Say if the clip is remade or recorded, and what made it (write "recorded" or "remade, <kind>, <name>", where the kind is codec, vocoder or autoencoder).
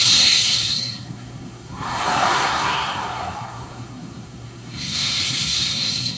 remade, codec, SNAC